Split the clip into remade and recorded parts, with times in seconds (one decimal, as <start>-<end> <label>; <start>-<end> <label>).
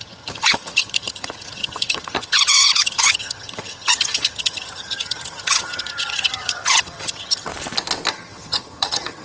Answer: 0.0-7.5 remade; 7.5-8.1 recorded; 8.1-9.2 remade